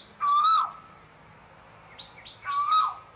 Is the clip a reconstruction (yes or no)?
no